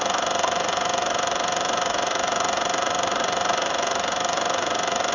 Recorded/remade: remade